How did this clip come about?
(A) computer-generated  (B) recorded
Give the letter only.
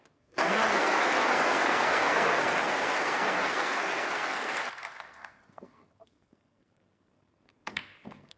A